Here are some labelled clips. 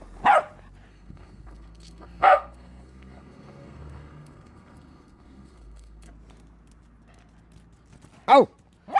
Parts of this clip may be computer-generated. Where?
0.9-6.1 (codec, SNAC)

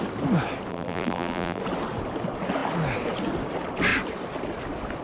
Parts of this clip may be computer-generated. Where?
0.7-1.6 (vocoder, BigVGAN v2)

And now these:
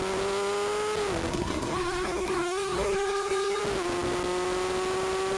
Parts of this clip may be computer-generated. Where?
1.3-3.6 (codec, SNAC)

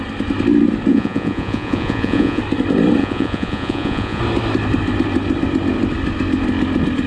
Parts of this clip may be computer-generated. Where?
0.9-2.4 (vocoder, Vocos); 3.0-4.2